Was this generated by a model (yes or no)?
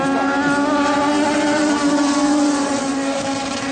no